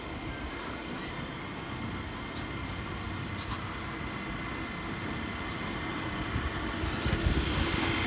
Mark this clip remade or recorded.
recorded